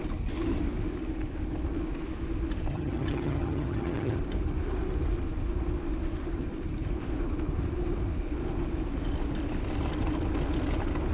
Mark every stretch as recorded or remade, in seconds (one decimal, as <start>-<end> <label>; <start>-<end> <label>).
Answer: 0.0-2.7 recorded; 2.7-4.2 remade; 4.2-11.1 recorded